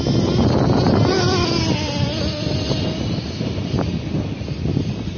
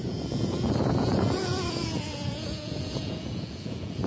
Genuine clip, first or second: first